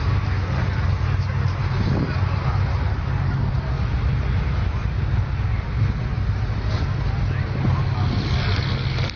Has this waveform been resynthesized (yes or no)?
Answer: no